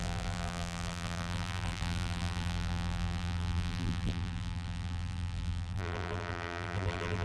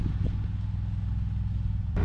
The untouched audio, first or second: second